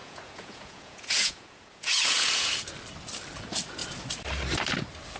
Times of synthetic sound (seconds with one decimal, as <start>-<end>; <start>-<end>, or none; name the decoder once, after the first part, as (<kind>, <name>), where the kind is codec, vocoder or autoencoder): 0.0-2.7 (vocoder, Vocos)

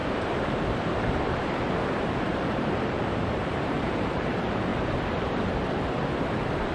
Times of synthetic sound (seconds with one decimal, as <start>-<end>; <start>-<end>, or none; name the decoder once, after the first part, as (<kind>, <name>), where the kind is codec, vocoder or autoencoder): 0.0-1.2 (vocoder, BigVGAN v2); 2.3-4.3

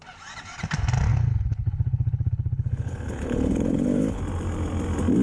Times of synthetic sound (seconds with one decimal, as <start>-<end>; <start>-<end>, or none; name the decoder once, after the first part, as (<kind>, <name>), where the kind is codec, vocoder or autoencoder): 1.1-4.2 (codec, HILCodec)

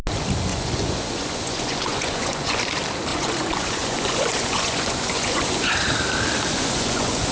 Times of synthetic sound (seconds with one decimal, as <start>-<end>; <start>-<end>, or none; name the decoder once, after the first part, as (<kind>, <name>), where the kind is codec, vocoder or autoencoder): 0.5-2.6 (vocoder, Vocos); 3.1-5.7; 6.5-7.3

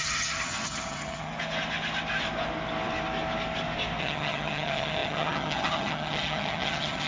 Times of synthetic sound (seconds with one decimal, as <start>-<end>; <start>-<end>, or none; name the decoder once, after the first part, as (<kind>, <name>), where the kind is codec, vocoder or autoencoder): 0.0-1.3 (vocoder, HiFi-GAN); 4.0-7.1